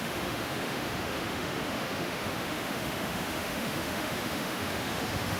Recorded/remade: remade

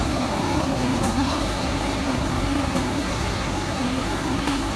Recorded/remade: remade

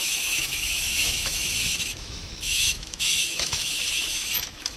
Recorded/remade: remade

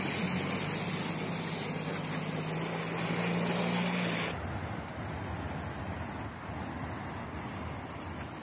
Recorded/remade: recorded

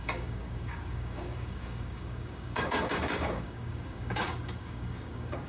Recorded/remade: remade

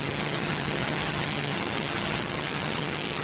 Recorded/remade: remade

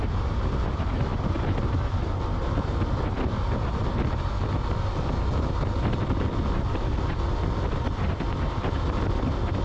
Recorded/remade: recorded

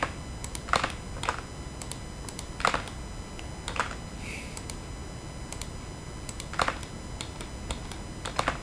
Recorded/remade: recorded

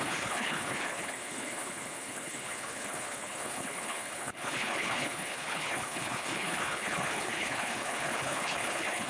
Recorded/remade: remade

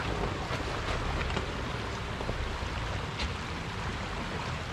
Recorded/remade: recorded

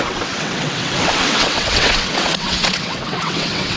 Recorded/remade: remade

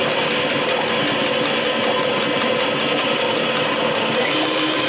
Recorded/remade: recorded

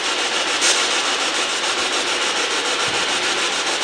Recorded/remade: recorded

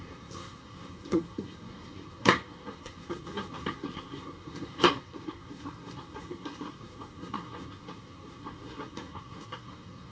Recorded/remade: remade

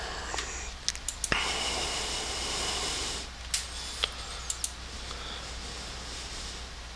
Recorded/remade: recorded